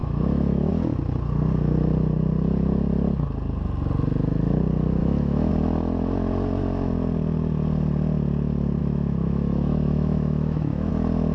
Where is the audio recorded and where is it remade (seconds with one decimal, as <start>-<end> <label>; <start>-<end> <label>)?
0.0-0.7 remade; 0.7-5.0 recorded; 5.0-5.5 remade; 5.5-8.8 recorded; 8.8-10.9 remade; 10.9-11.3 recorded